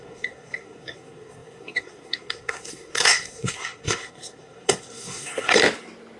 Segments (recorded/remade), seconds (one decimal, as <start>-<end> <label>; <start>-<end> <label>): 0.0-5.6 remade; 5.6-6.2 recorded